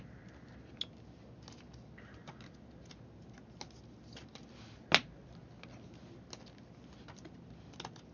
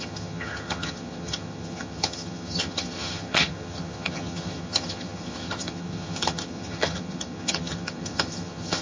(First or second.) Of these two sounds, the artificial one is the second